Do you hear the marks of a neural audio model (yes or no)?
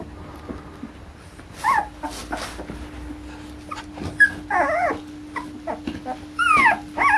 no